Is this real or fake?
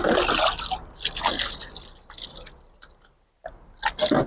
real